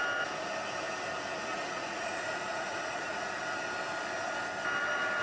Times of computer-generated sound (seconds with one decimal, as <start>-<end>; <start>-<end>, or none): 1.5-3.4